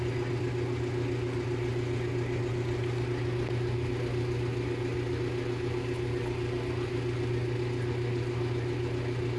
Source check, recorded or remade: recorded